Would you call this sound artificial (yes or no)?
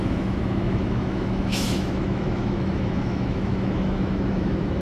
yes